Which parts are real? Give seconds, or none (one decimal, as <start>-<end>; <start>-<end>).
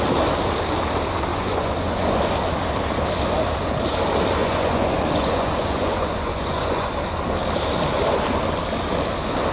0.0-1.3; 2.2-4.4; 6.9-9.5